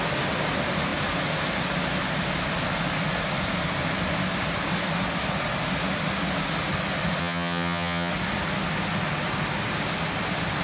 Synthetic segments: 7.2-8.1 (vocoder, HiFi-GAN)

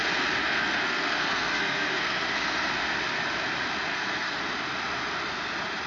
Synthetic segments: 0.4-2.7 (codec, SNAC); 3.9-4.4

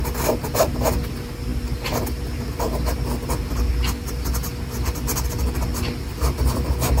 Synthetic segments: none

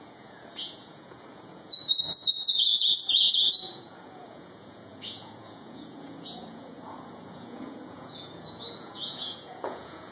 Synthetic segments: 0.0-10.1 (vocoder, Vocos)

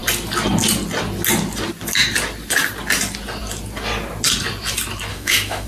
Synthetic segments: 5.1-5.7 (autoencoder, DAC-VAE)

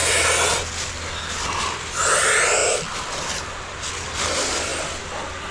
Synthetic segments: none

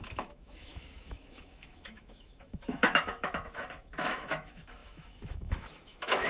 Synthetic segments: 0.0-6.3 (autoencoder, DAC-VAE)

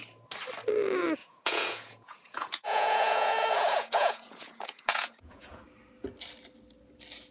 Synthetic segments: 1.2-5.6 (vocoder, Vocos)